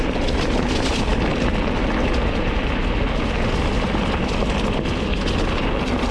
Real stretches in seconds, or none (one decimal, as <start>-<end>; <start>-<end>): 0.0-6.1